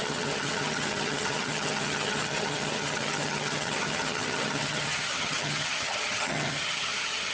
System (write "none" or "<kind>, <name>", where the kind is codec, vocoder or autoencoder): vocoder, HiFi-GAN